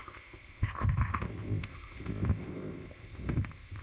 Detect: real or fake fake